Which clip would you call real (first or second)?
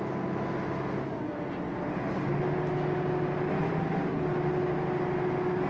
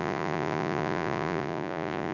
first